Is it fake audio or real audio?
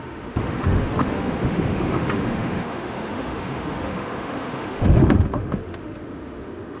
fake